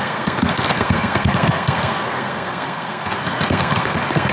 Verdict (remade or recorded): remade